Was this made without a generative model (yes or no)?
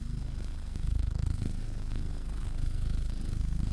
no